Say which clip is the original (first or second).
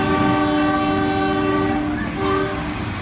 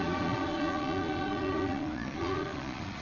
first